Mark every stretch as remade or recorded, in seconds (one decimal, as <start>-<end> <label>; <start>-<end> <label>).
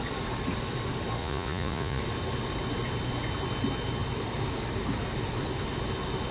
0.0-1.2 recorded; 1.2-2.0 remade; 2.0-6.3 recorded